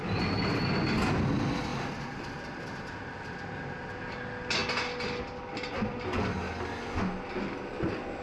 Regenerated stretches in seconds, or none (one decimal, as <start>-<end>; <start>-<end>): none